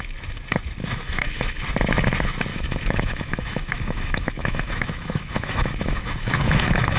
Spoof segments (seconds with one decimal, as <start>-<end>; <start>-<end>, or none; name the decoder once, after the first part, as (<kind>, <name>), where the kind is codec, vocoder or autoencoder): 0.8-1.6 (autoencoder, DAC-VAE); 2.5-7.0